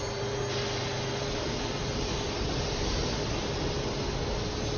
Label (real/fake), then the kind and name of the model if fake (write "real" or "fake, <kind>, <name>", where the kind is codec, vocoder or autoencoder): real